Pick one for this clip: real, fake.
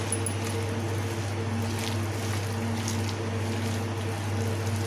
real